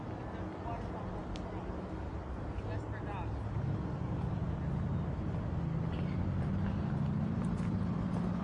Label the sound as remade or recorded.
recorded